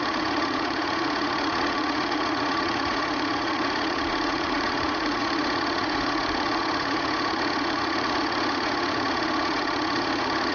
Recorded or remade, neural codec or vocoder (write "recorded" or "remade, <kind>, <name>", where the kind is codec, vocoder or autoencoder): remade, vocoder, Vocos